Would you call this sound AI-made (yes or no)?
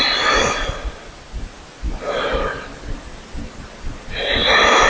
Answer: no